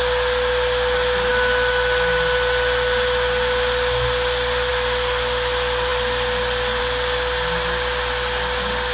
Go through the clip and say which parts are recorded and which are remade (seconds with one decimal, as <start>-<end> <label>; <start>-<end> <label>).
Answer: 0.0-8.9 recorded